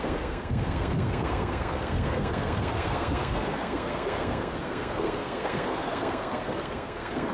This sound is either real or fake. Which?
fake